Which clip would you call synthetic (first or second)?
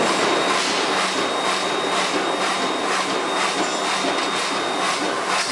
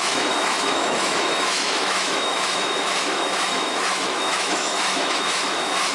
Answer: second